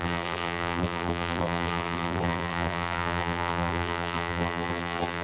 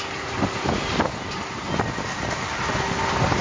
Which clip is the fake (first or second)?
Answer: first